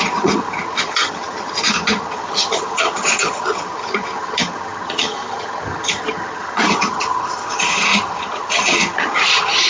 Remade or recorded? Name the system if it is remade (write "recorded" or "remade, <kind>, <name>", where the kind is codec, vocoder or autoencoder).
remade, vocoder, HiFi-GAN